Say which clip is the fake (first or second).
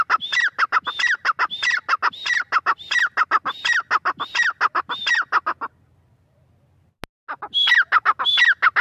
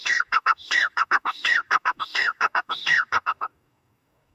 second